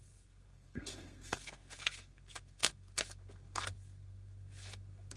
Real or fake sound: fake